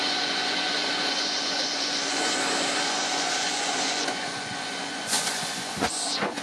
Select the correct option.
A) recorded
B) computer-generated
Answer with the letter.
B